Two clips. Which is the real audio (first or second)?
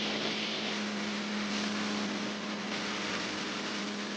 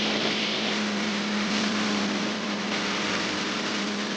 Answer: first